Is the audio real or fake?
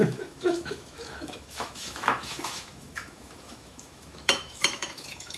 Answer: fake